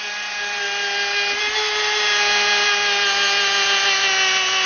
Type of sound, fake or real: real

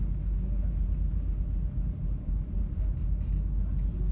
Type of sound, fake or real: real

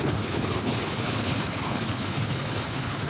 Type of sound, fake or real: fake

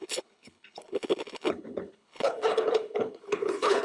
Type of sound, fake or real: fake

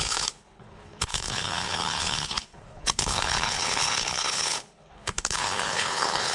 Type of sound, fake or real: fake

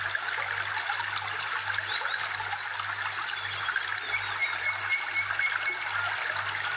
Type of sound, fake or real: real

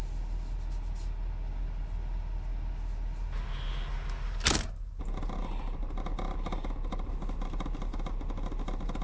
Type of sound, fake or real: real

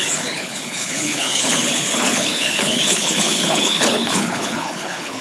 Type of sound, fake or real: fake